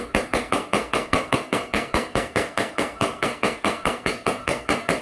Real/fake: fake